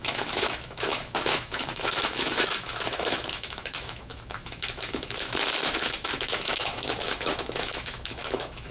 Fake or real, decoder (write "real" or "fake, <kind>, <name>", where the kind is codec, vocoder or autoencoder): fake, autoencoder, DAC-VAE